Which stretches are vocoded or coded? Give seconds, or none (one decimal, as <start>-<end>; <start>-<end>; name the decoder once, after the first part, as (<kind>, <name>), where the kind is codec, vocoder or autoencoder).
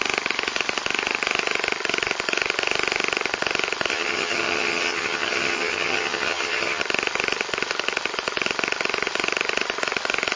3.9-6.8 (vocoder, HiFi-GAN)